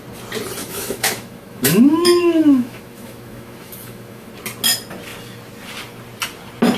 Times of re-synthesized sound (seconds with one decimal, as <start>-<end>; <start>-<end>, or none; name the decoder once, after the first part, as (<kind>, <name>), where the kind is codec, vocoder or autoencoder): 0.6-4.3 (autoencoder, DAC-VAE)

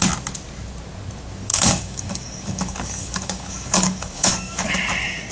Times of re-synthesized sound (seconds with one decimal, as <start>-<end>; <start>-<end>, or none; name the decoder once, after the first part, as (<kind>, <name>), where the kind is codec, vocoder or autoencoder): 1.5-4.7 (codec, DAC)